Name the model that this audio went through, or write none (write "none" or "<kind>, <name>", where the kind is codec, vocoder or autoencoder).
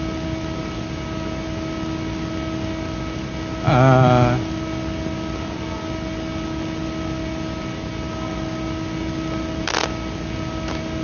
none